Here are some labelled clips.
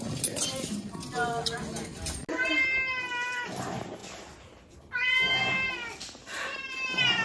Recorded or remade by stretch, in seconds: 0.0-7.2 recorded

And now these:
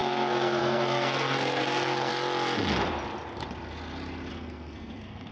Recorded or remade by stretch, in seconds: 0.0-2.1 remade; 2.1-4.3 recorded; 4.3-5.3 remade

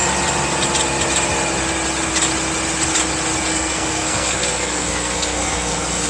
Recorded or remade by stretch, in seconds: 0.0-3.5 recorded; 3.5-6.1 remade

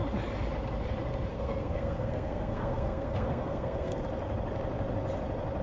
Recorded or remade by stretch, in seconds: 0.0-1.3 recorded; 1.3-4.0 remade; 4.0-5.6 recorded

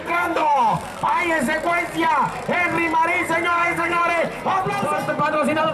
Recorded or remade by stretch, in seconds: 0.0-1.2 remade; 1.2-3.5 recorded; 3.5-4.0 remade; 4.0-5.7 recorded

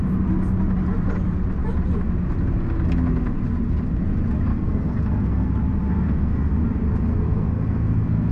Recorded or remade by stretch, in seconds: 0.0-4.5 recorded; 4.5-5.5 remade; 5.5-5.9 recorded; 5.9-6.5 remade; 6.5-7.1 recorded; 7.1-8.3 remade

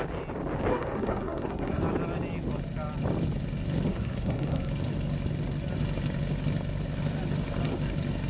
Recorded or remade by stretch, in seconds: 0.0-0.7 recorded; 0.7-1.8 remade; 1.8-3.9 recorded; 3.9-4.7 remade; 4.7-8.3 recorded